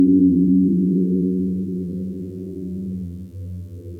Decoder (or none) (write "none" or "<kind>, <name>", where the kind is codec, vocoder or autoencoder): vocoder, BigVGAN v2